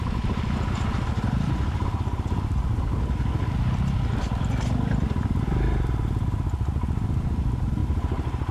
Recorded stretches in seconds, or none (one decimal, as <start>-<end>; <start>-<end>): 0.0-7.8